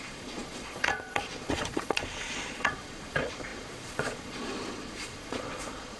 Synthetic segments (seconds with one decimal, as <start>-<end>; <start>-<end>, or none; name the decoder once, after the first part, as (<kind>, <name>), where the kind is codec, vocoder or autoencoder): 0.0-6.0 (vocoder, Vocos)